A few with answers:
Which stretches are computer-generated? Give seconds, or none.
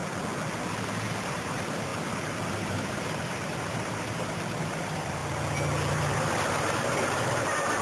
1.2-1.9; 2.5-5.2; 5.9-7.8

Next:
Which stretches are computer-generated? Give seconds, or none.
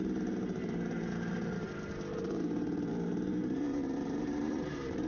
0.0-5.1